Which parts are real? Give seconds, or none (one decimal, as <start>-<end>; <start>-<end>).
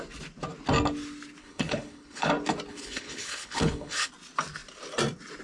0.0-1.4; 2.3-2.7; 4.1-5.4